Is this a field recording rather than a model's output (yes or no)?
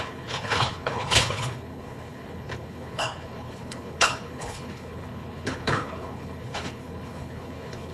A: no